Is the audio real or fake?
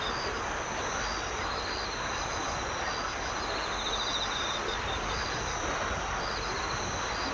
real